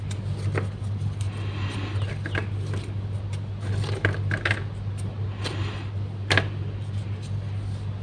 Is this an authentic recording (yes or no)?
yes